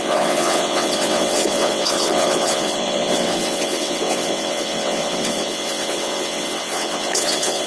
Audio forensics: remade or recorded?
remade